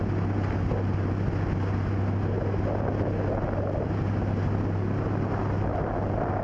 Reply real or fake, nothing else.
real